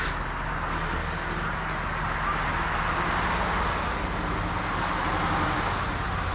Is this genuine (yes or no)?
yes